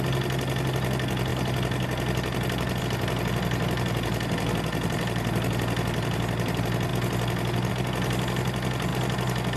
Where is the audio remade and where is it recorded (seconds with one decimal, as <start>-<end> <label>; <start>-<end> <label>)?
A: 0.0-9.6 recorded